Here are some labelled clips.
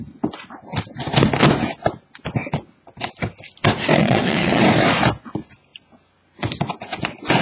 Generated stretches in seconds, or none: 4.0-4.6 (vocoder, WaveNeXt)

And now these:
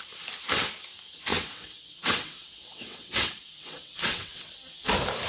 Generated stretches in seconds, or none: 1.3-4.5 (vocoder, WaveNeXt)

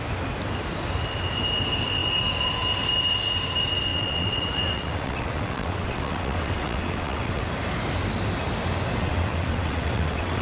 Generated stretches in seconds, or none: 3.9-7.5 (vocoder, WaveNeXt); 9.0-10.4